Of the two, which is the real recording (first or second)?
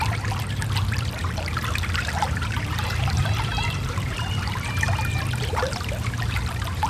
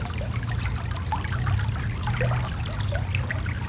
second